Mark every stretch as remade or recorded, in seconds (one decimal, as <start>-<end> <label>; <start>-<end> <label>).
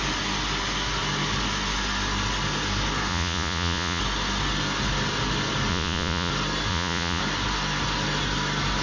0.0-3.1 recorded; 3.1-4.0 remade; 4.0-5.7 recorded; 5.7-6.3 remade; 6.3-6.7 recorded; 6.7-7.2 remade; 7.2-8.8 recorded